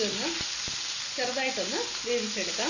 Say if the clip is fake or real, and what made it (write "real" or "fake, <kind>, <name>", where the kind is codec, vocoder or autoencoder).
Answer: real